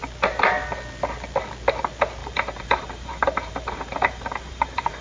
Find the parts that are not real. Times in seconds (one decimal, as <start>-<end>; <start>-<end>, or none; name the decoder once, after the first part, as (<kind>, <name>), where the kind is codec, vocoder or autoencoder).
2.2-5.0 (vocoder, BigVGAN v2)